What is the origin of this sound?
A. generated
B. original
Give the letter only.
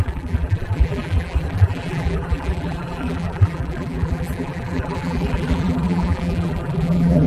A